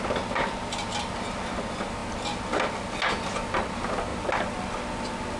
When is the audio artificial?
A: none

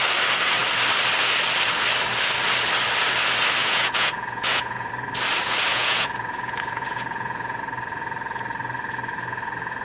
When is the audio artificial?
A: 3.6-4.9 (vocoder, Vocos); 5.7-7.6

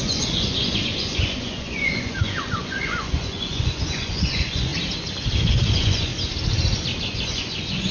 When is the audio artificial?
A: 0.0-4.7 (vocoder, Vocos); 5.5-6.1; 7.0-7.9

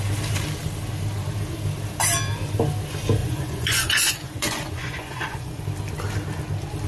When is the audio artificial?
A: 3.2-5.6 (vocoder, Vocos)

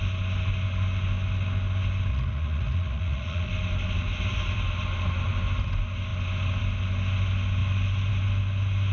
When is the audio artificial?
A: 2.1-3.5 (vocoder, Vocos)